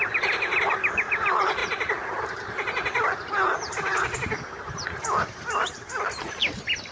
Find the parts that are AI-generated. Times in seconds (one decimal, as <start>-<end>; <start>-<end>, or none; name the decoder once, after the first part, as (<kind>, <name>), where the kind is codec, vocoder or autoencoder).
none